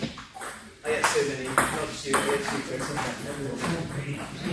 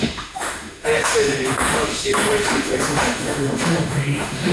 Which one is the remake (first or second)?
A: second